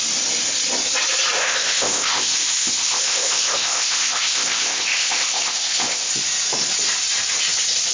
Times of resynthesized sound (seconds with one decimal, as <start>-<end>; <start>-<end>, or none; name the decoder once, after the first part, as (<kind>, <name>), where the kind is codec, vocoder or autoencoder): 1.4-6.1 (codec, ZipCodec)